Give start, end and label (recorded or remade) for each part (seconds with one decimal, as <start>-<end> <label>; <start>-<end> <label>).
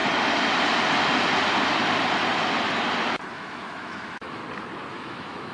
0.0-3.3 recorded; 3.3-4.4 remade; 4.4-4.9 recorded; 4.9-5.5 remade